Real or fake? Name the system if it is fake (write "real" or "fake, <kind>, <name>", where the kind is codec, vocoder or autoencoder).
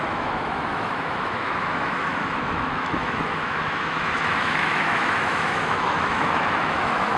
fake, autoencoder, DAC-VAE